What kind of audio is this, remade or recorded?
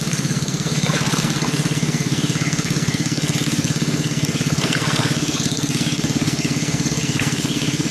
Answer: remade